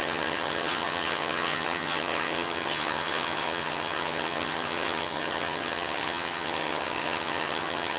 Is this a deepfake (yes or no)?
yes